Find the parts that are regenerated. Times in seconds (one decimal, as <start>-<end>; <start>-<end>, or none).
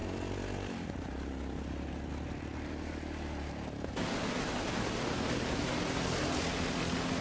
none